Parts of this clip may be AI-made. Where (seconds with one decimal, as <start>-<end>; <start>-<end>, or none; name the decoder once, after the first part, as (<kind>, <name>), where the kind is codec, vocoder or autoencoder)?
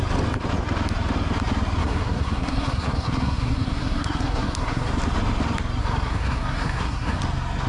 1.8-4.9 (codec, SNAC); 5.8-7.2